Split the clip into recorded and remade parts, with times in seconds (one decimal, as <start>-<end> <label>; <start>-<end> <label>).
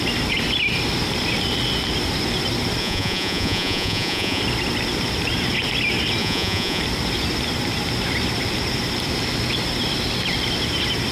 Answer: 0.0-2.8 recorded; 2.8-4.4 remade; 4.4-6.2 recorded; 6.2-6.8 remade; 6.8-11.1 recorded